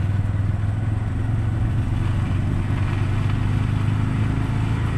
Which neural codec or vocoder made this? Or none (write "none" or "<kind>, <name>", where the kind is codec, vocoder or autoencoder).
none